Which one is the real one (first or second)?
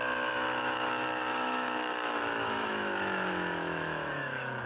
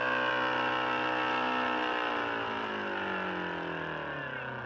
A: second